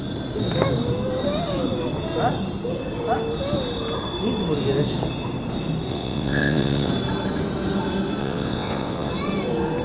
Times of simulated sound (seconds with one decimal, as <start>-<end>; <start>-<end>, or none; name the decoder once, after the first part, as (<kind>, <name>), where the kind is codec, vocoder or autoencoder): 5.9-6.9 (vocoder, WaveNeXt); 8.2-9.1